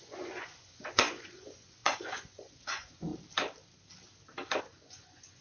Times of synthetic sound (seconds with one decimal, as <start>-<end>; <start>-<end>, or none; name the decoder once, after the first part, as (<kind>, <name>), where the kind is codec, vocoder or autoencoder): 0.0-3.1 (vocoder, Vocos); 4.6-5.4